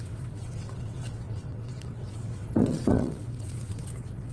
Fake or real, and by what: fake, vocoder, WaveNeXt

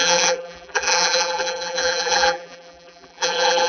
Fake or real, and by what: fake, vocoder, BigVGAN v2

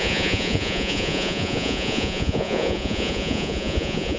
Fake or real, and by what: fake, vocoder, Vocos